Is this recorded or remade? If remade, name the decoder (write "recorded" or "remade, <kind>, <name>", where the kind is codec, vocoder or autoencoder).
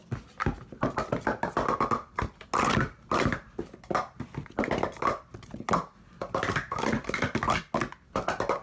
recorded